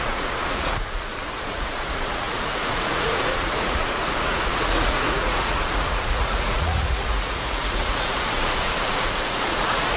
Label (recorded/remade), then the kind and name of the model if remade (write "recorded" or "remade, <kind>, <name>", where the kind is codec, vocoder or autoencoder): remade, vocoder, Vocos